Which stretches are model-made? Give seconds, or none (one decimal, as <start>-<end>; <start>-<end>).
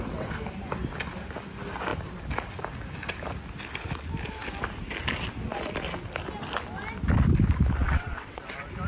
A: 7.8-8.4